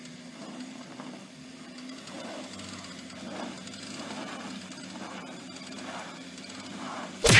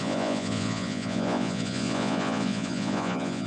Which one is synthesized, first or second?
second